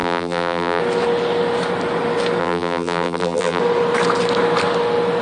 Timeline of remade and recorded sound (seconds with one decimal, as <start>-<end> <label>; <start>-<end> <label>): 0.0-0.8 remade; 0.8-2.4 recorded; 2.4-3.6 remade; 3.6-5.2 recorded